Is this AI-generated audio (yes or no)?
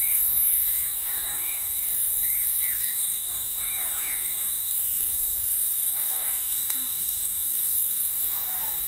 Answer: yes